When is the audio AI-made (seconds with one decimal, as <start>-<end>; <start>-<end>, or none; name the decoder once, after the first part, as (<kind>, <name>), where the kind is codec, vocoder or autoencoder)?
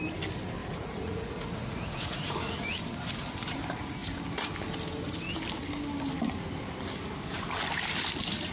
0.6-2.7 (vocoder, Vocos)